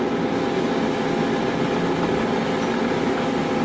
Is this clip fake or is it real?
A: real